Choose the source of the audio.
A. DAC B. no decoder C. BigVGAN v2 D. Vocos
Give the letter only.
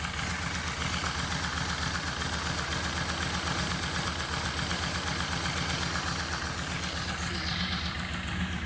B